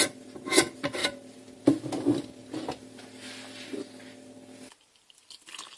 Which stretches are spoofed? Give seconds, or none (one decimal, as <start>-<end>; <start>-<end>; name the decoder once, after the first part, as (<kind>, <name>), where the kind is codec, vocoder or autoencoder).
none